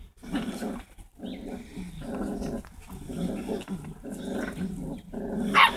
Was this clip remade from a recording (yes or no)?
no